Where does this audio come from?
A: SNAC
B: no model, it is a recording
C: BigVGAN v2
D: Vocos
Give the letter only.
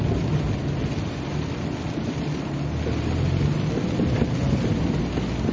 B